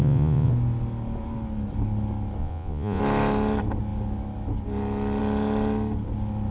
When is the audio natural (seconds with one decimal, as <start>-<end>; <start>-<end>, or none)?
0.5-2.4; 3.0-6.5